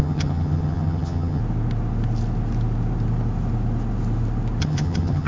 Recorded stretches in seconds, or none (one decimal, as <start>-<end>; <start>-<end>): 1.4-4.6